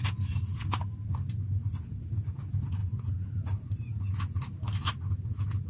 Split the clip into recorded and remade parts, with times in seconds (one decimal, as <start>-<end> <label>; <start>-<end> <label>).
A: 0.0-2.8 recorded; 2.8-3.8 remade; 3.8-5.7 recorded